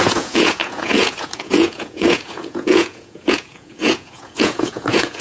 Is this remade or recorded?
remade